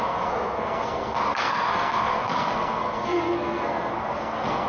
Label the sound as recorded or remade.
remade